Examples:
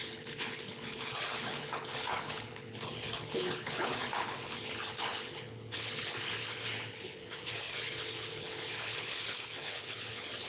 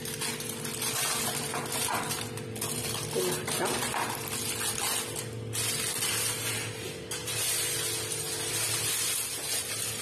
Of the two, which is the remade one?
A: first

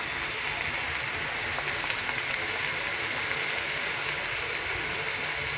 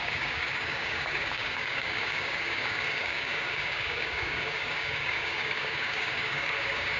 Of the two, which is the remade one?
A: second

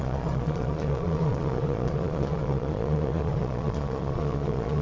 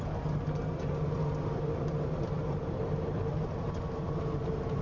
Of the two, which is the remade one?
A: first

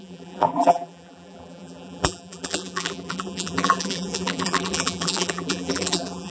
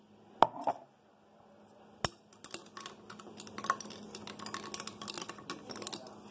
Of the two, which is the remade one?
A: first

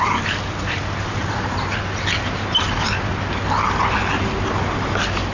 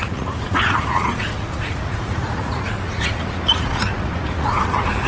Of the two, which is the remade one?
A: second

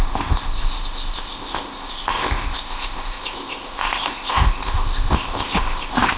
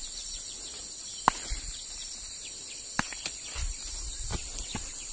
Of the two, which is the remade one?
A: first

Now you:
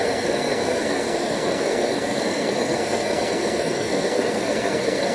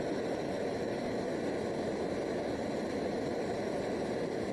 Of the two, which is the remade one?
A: first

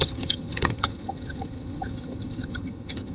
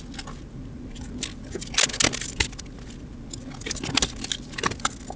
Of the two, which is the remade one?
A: first